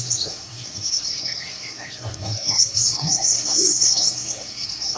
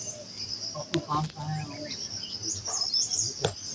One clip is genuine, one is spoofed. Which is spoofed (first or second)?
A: first